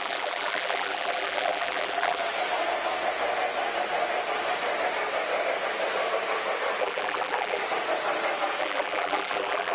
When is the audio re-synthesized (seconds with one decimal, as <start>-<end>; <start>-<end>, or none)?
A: 0.0-2.2; 6.8-7.6; 8.6-9.7